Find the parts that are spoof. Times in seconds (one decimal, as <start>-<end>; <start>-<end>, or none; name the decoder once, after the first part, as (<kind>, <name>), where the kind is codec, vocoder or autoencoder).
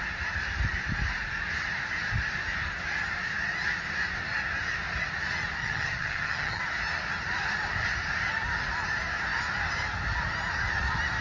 5.6-6.6 (vocoder, HiFi-GAN)